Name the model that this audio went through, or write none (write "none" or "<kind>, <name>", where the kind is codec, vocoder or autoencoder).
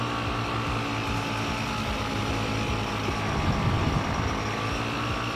none